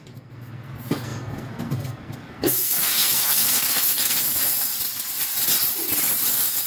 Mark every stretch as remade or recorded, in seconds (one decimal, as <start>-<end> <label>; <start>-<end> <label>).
0.0-4.7 remade; 4.7-6.3 recorded; 6.3-6.7 remade